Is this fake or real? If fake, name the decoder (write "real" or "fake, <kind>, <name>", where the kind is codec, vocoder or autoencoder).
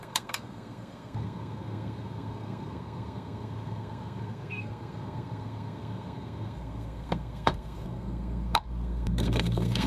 fake, codec, SNAC